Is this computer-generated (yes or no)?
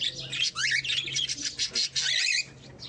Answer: no